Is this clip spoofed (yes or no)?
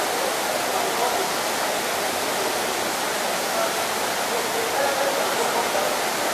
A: no